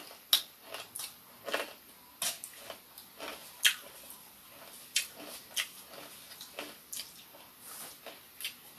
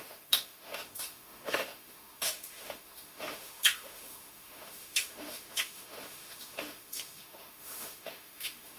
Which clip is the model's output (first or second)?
second